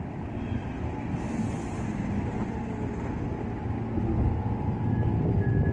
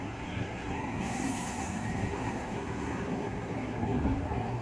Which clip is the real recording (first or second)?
first